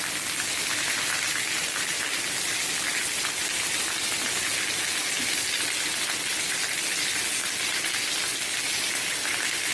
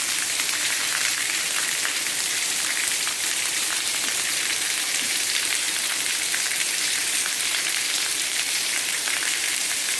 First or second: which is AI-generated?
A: second